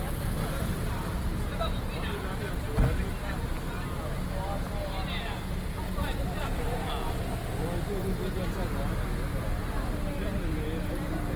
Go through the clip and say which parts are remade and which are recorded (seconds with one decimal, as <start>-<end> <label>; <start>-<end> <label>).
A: 0.0-11.4 recorded